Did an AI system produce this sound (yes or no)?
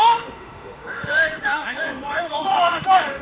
yes